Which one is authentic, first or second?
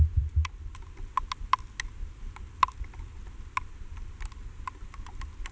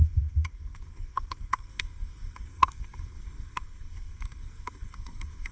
first